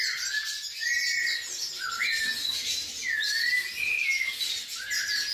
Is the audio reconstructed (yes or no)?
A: no